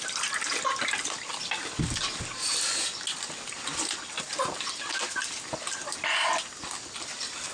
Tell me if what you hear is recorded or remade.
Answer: recorded